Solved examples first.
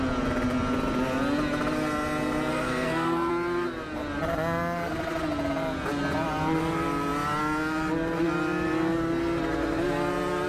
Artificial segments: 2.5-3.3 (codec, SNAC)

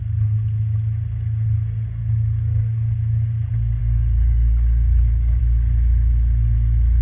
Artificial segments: 2.0-2.6 (codec, DAC); 3.8-5.4

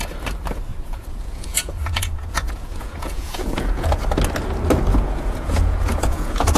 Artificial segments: 0.7-4.0 (vocoder, Vocos); 4.9-6.6

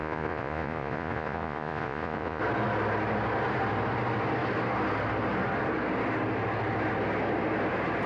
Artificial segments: 0.0-2.4 (vocoder, Vocos)

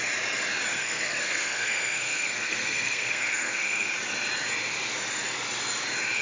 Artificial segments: 0.7-3.9 (codec, SNAC)

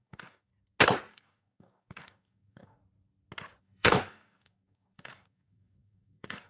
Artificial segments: 0.0-0.5 (codec, DAC); 1.1-2.8; 3.6-6.5

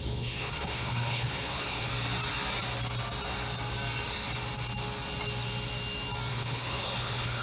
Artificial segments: 0.0-1.9 (codec, HILCodec); 6.3-7.4

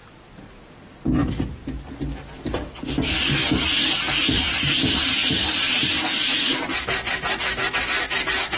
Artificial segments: 1.2-3.2 (vocoder, BigVGAN v2)